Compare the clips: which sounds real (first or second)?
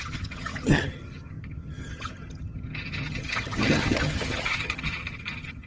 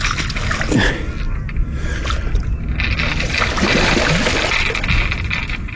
second